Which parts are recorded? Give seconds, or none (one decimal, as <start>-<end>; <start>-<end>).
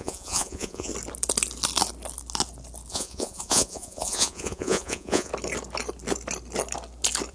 0.9-2.9; 5.3-7.3